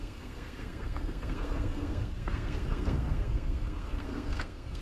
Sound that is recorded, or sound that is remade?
remade